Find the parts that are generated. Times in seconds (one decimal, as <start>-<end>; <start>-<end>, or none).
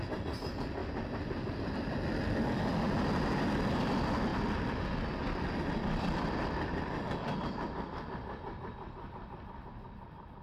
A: none